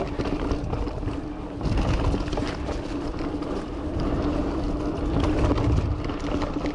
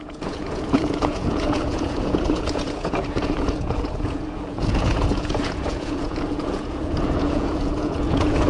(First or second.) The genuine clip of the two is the first